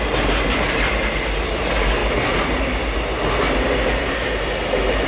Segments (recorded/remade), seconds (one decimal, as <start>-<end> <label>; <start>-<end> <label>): 0.0-5.1 recorded